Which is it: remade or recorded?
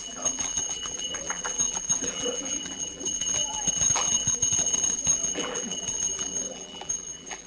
remade